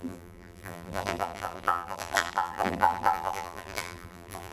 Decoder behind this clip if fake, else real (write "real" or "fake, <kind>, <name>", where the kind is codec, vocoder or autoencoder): fake, vocoder, BigVGAN v2